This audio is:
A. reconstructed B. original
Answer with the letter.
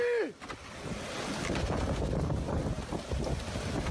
B